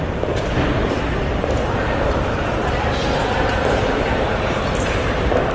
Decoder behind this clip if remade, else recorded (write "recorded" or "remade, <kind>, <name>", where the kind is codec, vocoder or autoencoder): remade, vocoder, BigVGAN v2